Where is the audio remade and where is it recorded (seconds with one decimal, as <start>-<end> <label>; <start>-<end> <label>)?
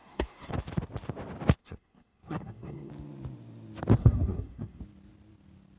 0.0-0.5 remade; 0.5-1.6 recorded; 1.6-2.9 remade; 2.9-4.0 recorded; 4.0-4.8 remade; 4.8-5.8 recorded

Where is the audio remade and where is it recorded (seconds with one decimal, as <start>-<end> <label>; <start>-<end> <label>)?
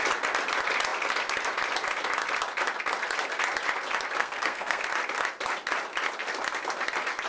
0.0-4.2 recorded; 4.2-4.8 remade; 4.8-7.3 recorded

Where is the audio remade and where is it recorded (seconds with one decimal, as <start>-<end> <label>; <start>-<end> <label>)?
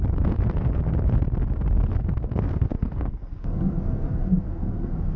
0.0-1.9 recorded; 1.9-5.2 remade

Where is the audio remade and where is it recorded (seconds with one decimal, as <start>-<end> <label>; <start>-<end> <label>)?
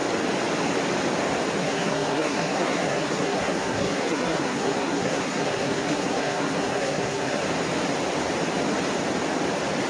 0.0-1.6 recorded; 1.6-7.4 remade; 7.4-9.9 recorded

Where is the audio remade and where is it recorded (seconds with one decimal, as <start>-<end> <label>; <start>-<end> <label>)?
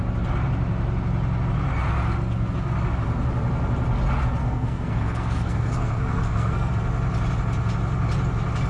0.0-4.4 recorded; 4.4-6.7 remade; 6.7-8.7 recorded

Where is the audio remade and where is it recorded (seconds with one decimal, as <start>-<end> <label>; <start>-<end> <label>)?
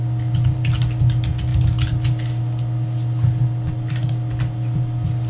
0.0-5.3 recorded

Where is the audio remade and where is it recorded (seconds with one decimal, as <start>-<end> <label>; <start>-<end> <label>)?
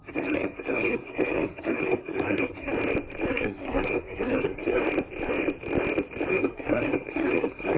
0.0-2.7 remade; 2.7-3.3 recorded; 3.3-4.8 remade; 4.8-6.3 recorded; 6.3-7.8 remade